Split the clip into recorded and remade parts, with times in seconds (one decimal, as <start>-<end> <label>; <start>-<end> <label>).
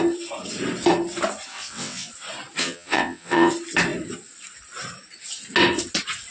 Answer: 0.0-1.5 recorded; 1.5-2.1 remade; 2.1-2.6 recorded; 2.6-3.5 remade; 3.5-6.3 recorded